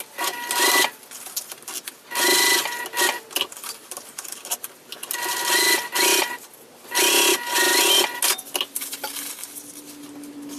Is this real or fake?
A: real